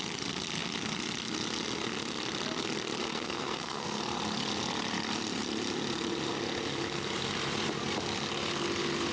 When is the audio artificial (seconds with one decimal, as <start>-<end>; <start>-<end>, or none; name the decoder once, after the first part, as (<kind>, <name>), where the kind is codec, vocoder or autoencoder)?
3.0-4.0 (codec, SNAC)